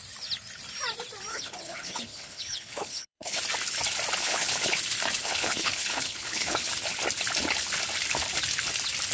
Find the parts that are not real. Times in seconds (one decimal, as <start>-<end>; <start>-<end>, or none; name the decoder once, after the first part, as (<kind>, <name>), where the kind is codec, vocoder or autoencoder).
1.3-3.4 (codec, HILCodec); 4.2-4.8; 5.2-6.7